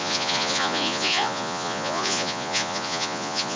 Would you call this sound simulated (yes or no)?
yes